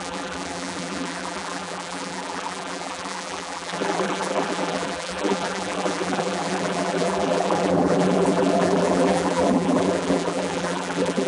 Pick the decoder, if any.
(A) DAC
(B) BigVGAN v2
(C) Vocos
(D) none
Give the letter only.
B